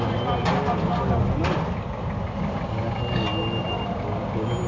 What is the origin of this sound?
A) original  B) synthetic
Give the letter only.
A